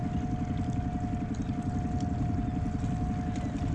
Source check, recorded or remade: recorded